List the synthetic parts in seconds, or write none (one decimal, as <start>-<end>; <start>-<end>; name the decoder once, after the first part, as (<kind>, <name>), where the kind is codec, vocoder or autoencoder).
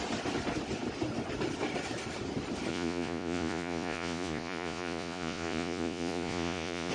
2.7-6.9 (vocoder, Vocos)